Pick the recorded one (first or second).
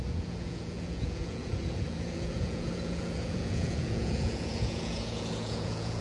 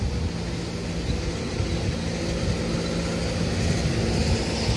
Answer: second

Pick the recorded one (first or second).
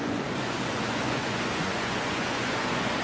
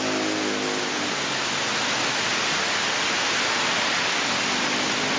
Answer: second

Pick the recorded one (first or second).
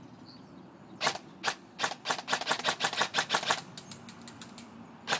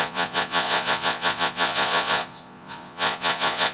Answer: first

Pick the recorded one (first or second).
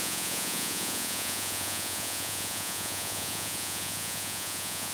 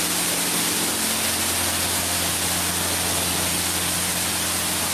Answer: second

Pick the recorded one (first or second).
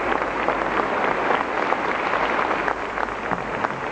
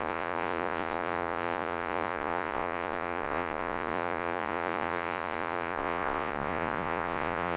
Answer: first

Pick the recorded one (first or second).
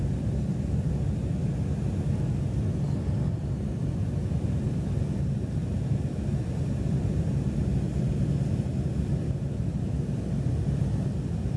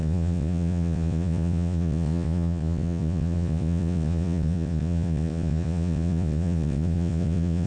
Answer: first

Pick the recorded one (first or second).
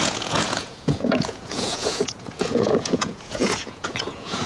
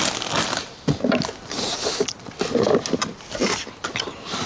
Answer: second